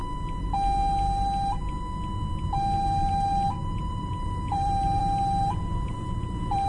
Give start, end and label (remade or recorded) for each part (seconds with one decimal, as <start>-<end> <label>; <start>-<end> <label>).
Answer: 0.0-3.6 recorded; 3.6-6.7 remade